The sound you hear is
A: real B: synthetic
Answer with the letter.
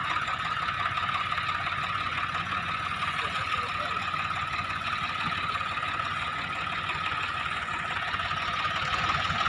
B